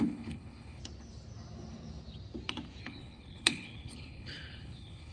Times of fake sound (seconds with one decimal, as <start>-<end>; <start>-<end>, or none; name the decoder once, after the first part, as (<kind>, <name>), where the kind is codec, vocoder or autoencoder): 0.0-0.8 (codec, HILCodec); 2.8-5.1